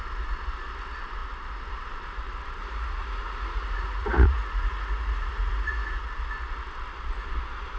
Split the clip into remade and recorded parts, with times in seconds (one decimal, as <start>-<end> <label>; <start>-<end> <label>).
0.0-2.6 recorded; 2.6-6.0 remade; 6.0-7.8 recorded

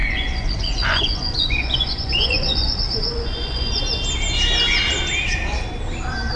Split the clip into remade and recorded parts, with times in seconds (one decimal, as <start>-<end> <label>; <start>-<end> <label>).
0.0-3.8 remade; 3.8-6.4 recorded

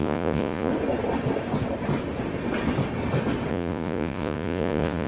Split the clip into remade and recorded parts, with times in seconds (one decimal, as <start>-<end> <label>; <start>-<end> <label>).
0.0-0.7 remade; 0.7-3.5 recorded; 3.5-5.1 remade

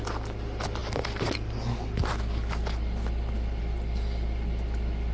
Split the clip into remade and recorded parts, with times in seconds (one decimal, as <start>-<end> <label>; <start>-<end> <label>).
0.0-5.1 recorded

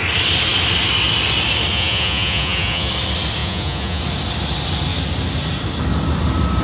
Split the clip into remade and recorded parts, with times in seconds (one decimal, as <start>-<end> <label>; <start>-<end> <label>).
0.0-1.7 recorded; 1.7-2.9 remade; 2.9-3.4 recorded; 3.4-4.0 remade; 4.0-6.6 recorded

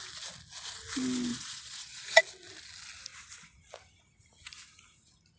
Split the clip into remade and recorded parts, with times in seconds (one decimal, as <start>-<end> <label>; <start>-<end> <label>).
0.0-1.3 recorded; 1.3-2.2 remade; 2.2-5.4 recorded

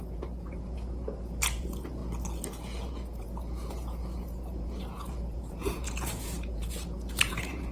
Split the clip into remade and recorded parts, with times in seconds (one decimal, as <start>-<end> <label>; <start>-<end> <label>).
0.0-2.0 remade; 2.0-2.5 recorded; 2.5-7.7 remade